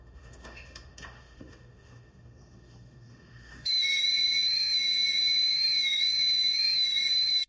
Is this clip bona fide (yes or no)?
no